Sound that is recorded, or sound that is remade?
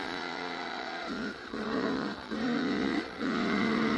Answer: remade